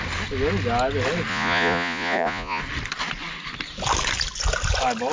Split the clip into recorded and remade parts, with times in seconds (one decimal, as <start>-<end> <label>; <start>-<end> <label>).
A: 0.0-1.3 recorded; 1.3-2.6 remade; 2.6-5.1 recorded